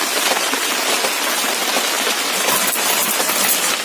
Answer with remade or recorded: recorded